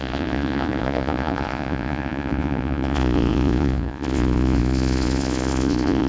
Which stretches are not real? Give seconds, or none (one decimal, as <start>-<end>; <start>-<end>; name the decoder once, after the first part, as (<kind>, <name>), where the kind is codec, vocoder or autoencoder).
0.0-6.1 (vocoder, Vocos)